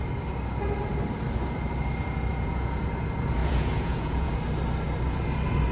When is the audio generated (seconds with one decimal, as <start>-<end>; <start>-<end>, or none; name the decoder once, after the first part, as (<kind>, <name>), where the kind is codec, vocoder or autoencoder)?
2.3-2.8 (vocoder, Vocos); 3.4-4.3